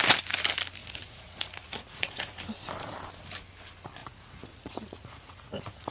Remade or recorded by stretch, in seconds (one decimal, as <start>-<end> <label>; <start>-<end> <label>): 0.0-0.8 recorded; 0.8-2.4 remade; 2.4-4.0 recorded; 4.0-5.9 remade